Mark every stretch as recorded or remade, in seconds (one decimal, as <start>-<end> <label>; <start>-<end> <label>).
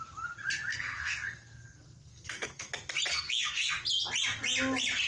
0.0-0.7 recorded; 0.7-2.7 remade; 2.7-3.1 recorded; 3.1-3.7 remade; 3.7-5.1 recorded